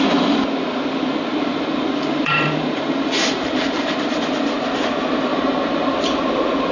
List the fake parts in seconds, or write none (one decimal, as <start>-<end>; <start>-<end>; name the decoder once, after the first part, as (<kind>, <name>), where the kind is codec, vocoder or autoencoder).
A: 1.3-4.0 (vocoder, BigVGAN v2); 5.3-5.9